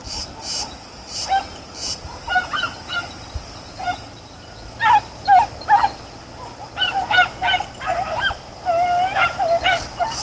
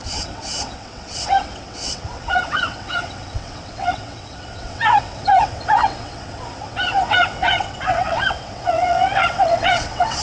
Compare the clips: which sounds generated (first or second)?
second